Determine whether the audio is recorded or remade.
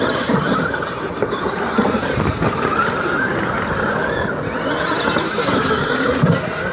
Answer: recorded